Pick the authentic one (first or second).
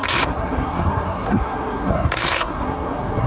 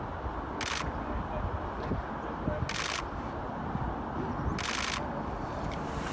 second